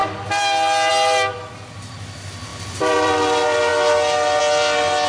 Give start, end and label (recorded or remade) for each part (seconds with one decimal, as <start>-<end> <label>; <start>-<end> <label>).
0.0-2.5 recorded; 2.5-3.1 remade; 3.1-5.1 recorded